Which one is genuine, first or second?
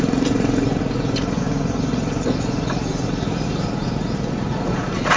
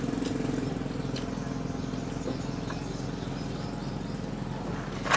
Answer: second